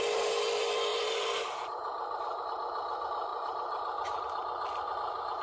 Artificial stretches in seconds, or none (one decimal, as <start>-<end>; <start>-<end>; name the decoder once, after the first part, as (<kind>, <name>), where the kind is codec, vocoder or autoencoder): 0.9-2.4 (vocoder, BigVGAN v2); 3.3-4.2